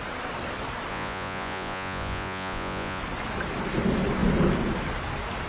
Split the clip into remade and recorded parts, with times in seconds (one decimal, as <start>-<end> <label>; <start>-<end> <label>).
0.0-0.9 recorded; 0.9-3.0 remade; 3.0-5.5 recorded